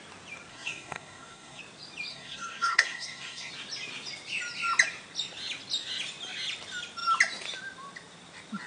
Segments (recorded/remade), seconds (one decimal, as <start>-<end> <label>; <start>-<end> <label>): 0.0-0.5 recorded; 0.5-1.6 remade; 1.6-2.1 recorded; 2.1-3.5 remade; 3.5-8.7 recorded